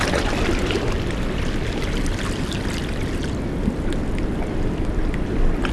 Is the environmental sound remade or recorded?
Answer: recorded